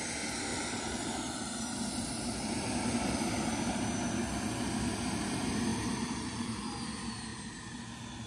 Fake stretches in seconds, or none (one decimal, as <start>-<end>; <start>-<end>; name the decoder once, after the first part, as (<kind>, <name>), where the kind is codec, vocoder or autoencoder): 0.5-2.1 (vocoder, BigVGAN v2); 5.7-6.8; 7.3-8.3